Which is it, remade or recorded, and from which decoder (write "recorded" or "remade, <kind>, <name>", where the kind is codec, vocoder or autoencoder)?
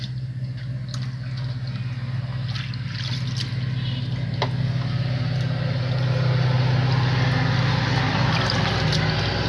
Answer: recorded